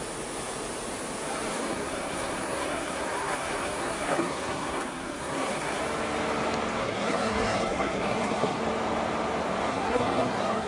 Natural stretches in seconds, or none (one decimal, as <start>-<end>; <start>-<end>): 0.0-1.5; 5.8-6.8; 8.6-9.7